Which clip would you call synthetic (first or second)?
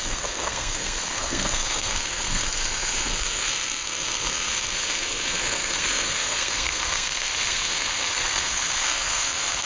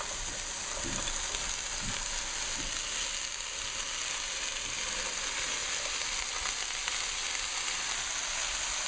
first